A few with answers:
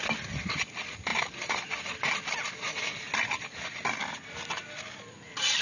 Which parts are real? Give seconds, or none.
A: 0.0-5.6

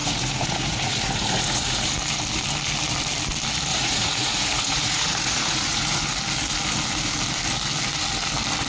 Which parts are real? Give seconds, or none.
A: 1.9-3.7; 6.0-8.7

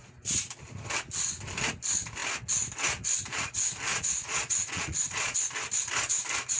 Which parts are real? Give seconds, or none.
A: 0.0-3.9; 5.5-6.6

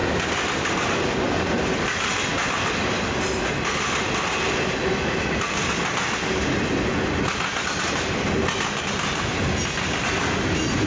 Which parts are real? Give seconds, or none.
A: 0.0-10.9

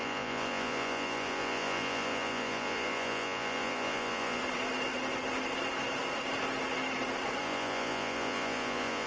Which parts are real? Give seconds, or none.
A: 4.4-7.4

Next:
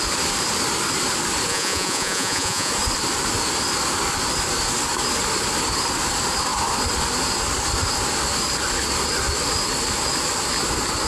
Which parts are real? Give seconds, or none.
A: 0.0-1.5; 2.7-11.1

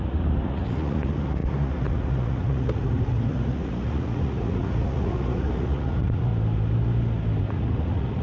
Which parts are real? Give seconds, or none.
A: 6.3-7.4